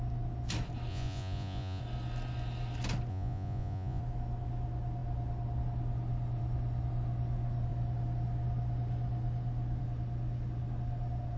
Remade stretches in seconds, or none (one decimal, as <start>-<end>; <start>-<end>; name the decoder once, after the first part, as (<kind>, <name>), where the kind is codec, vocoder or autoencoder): 0.9-1.8 (vocoder, Vocos); 3.1-4.0